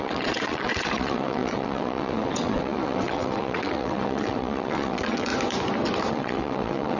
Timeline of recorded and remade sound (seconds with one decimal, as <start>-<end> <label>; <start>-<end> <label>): 0.0-5.3 remade; 5.3-6.1 recorded; 6.1-7.0 remade